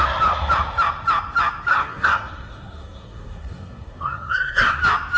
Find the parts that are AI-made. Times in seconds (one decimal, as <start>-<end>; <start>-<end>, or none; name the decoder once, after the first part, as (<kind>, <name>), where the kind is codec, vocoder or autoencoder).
1.7-4.8 (codec, SNAC)